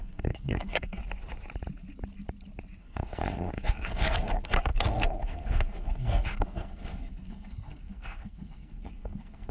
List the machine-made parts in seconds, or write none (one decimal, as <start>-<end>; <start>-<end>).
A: 0.0-1.0; 2.8-9.5